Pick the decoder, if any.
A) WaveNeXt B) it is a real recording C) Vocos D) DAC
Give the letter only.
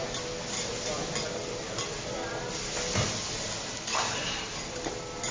B